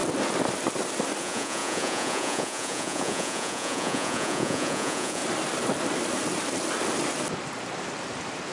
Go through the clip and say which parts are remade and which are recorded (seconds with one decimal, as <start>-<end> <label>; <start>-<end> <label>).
0.0-1.2 recorded; 1.2-5.2 remade; 5.2-8.5 recorded